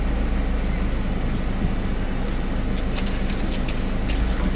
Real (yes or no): yes